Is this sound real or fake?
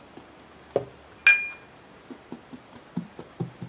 real